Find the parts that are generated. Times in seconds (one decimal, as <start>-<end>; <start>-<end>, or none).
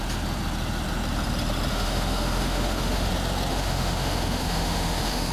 1.7-3.1; 3.5-5.3